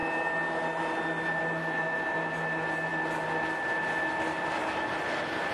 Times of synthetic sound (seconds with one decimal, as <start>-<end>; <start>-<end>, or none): none